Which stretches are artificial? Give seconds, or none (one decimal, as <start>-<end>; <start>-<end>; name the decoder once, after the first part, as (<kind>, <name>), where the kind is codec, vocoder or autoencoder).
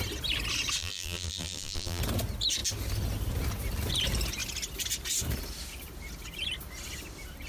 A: 0.8-2.0 (vocoder, BigVGAN v2)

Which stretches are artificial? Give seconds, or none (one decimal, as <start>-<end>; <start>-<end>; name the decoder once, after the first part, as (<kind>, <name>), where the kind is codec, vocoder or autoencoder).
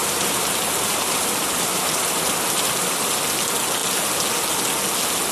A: 0.0-3.2 (vocoder, BigVGAN v2)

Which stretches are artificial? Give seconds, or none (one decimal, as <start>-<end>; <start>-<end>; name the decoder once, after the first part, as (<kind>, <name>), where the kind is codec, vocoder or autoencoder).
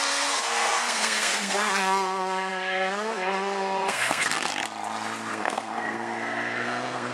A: 0.0-4.5 (codec, SNAC); 5.3-7.1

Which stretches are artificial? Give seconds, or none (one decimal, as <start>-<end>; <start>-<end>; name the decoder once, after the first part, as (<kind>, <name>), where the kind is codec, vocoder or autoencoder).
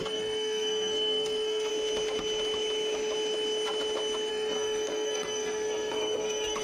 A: 0.0-1.7 (codec, SNAC); 4.3-6.6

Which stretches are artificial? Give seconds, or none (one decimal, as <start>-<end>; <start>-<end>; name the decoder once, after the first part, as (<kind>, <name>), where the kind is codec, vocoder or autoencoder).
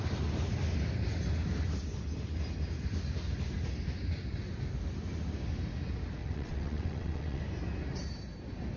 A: 6.2-7.4 (vocoder, WaveNeXt)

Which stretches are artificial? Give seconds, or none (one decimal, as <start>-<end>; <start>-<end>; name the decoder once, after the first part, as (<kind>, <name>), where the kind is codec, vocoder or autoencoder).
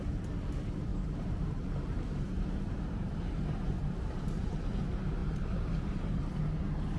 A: 0.9-4.8 (vocoder, BigVGAN v2); 5.2-6.2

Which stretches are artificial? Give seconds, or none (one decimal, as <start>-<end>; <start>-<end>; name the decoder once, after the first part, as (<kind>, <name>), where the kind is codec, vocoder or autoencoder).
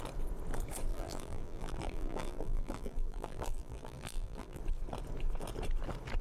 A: 0.9-4.6 (vocoder, BigVGAN v2)